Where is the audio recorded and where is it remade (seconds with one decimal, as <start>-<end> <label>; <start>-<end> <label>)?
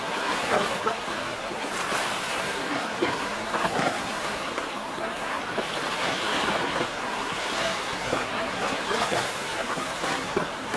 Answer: 0.0-1.7 remade; 1.7-2.3 recorded; 2.3-5.4 remade; 5.4-5.9 recorded; 5.9-10.8 remade